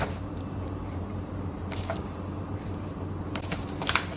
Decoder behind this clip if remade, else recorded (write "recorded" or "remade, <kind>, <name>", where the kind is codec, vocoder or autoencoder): remade, vocoder, BigVGAN v2